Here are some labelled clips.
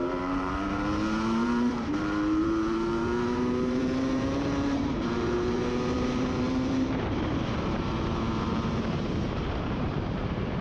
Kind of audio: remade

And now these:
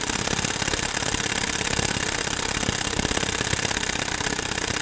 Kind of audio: recorded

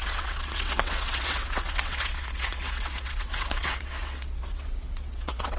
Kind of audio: remade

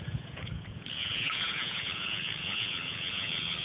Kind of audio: remade